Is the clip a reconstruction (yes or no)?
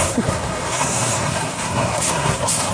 yes